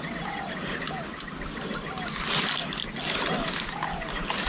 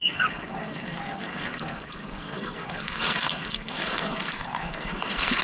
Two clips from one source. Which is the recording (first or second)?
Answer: first